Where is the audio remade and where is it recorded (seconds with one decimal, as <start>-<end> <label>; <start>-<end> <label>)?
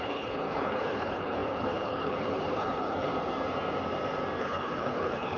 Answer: 0.0-3.1 remade; 3.1-4.4 recorded; 4.4-5.4 remade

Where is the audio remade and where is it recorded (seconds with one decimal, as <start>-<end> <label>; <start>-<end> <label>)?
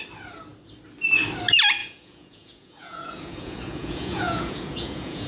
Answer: 0.0-1.8 recorded; 1.8-5.3 remade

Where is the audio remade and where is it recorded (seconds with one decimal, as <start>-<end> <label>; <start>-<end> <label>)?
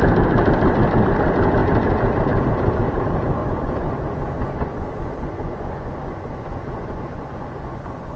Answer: 0.0-3.4 recorded; 3.4-8.2 remade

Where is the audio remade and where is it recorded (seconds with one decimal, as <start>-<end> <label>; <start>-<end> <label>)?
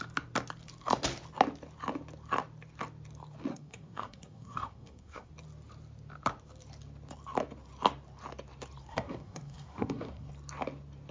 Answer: 0.0-3.5 recorded; 3.5-5.3 remade; 5.3-8.9 recorded; 8.9-10.3 remade; 10.3-11.1 recorded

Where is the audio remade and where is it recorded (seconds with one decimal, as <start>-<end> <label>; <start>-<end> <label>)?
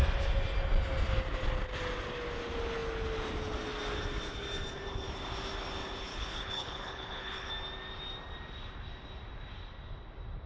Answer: 0.0-6.1 recorded; 6.1-7.5 remade; 7.5-10.5 recorded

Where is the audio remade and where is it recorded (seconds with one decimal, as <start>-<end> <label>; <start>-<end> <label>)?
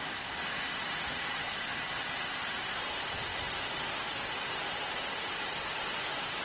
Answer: 0.0-6.4 recorded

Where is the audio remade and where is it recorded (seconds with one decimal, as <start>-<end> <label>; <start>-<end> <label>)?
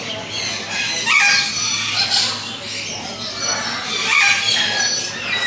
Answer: 0.0-5.5 recorded